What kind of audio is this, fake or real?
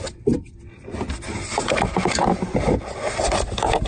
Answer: real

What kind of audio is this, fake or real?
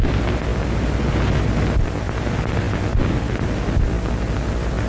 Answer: real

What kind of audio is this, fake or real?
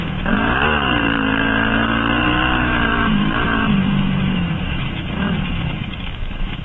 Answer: fake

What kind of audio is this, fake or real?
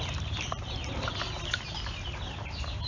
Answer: real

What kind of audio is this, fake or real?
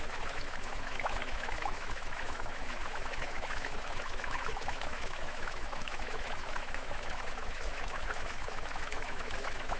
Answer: fake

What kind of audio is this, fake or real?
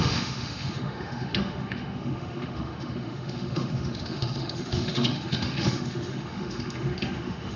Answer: fake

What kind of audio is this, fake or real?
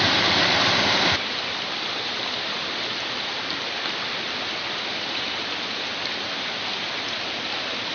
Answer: real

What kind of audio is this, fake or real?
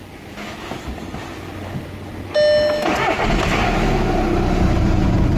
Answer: real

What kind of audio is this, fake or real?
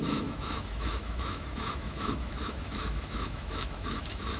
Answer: fake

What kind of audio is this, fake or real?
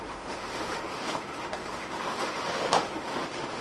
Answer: fake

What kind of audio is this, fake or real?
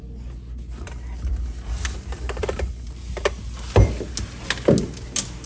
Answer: real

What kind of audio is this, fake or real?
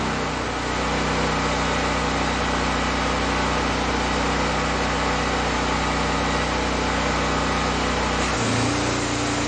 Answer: real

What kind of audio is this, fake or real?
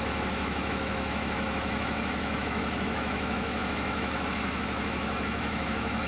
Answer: fake